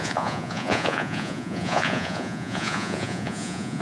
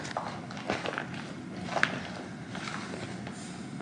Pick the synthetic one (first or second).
first